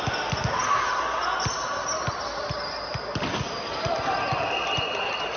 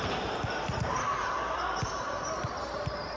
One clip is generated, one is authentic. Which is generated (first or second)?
second